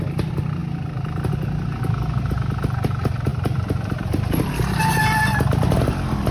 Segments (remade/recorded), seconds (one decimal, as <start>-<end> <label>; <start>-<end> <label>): 0.0-3.3 recorded; 3.3-4.8 remade; 4.8-6.3 recorded